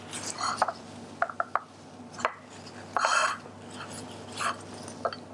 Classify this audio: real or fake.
real